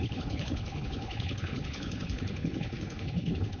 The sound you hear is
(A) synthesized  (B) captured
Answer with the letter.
A